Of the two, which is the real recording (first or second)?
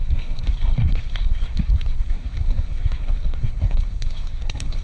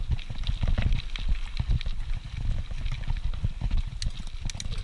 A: second